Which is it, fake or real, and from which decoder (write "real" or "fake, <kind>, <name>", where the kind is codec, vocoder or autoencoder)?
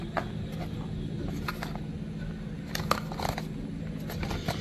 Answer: real